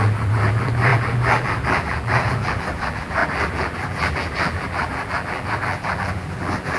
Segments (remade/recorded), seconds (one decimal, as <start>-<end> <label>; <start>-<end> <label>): 0.0-6.8 remade